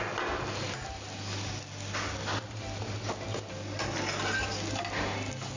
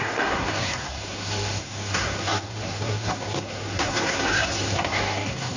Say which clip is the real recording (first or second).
first